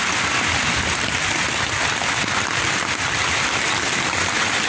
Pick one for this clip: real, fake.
real